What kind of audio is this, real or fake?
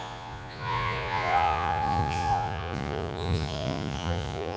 fake